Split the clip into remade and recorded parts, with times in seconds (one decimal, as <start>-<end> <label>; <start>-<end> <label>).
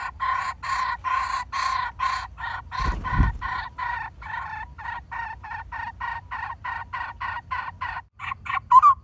0.0-9.0 recorded